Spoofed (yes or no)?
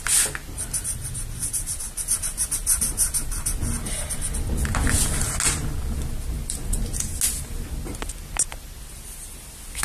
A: no